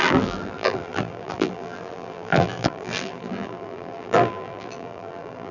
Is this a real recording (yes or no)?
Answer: no